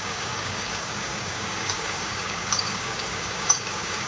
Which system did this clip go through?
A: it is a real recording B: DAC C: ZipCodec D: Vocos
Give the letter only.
B